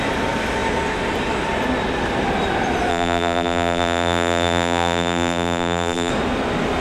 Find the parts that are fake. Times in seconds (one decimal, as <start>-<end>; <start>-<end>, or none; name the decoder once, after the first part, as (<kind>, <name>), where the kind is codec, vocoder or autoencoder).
2.9-6.1 (vocoder, BigVGAN v2)